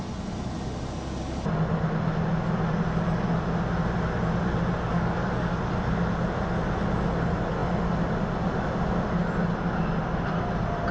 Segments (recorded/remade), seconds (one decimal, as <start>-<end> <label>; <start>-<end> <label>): 0.0-4.9 recorded; 4.9-5.5 remade; 5.5-10.9 recorded